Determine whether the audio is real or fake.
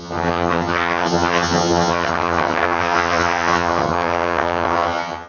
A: fake